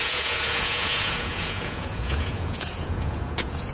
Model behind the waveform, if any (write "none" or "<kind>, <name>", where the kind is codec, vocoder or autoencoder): vocoder, Vocos